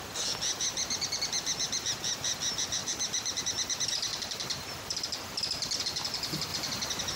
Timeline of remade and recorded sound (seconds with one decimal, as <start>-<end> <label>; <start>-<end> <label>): 0.0-2.8 recorded; 2.8-3.4 remade; 3.4-4.1 recorded; 4.1-5.4 remade; 5.4-6.5 recorded; 6.5-7.2 remade